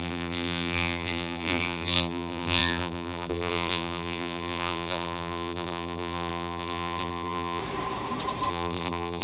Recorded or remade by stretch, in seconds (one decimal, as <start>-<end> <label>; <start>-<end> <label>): 0.0-7.6 remade; 7.6-8.5 recorded; 8.5-9.2 remade